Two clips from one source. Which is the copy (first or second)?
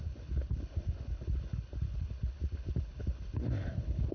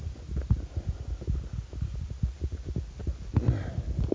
first